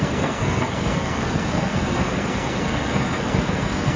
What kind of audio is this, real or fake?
fake